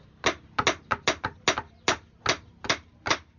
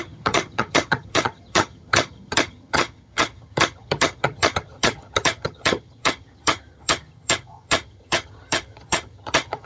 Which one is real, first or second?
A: first